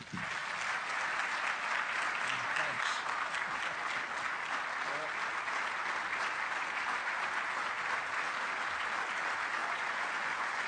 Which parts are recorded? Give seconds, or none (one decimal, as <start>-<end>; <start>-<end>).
0.0-9.6